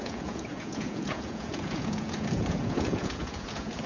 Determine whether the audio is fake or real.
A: fake